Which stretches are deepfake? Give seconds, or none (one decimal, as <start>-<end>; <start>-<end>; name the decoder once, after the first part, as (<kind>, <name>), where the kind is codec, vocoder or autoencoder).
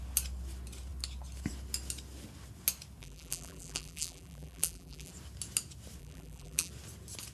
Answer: 3.0-5.1 (vocoder, BigVGAN v2); 6.0-6.7